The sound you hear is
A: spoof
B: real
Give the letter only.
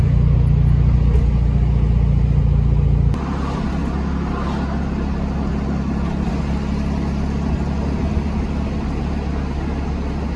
B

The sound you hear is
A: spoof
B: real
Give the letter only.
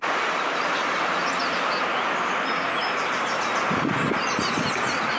B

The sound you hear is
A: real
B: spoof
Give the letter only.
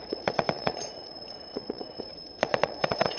B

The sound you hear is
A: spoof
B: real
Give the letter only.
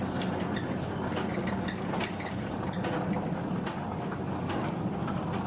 B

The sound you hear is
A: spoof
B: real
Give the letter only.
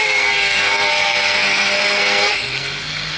A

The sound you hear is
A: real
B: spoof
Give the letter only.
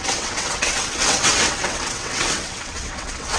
B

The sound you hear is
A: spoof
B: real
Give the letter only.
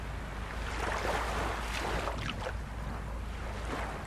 B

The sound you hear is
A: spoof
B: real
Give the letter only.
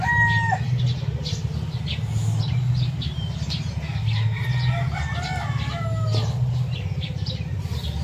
B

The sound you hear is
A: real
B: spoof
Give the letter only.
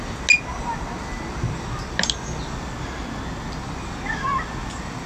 A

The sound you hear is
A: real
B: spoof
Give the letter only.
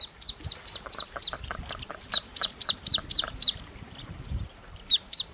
B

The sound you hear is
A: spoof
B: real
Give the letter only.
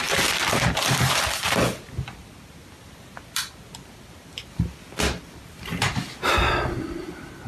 B